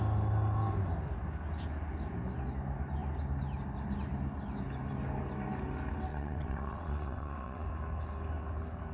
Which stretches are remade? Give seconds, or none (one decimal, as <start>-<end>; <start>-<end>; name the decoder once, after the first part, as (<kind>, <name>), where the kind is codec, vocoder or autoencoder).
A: 6.1-7.7 (vocoder, WaveNeXt)